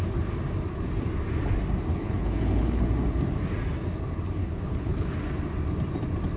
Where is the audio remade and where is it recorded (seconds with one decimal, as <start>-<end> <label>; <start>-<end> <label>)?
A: 0.0-1.9 recorded; 1.9-2.9 remade; 2.9-4.4 recorded; 4.4-5.2 remade; 5.2-6.4 recorded